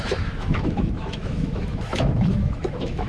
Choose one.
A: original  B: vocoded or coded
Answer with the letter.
B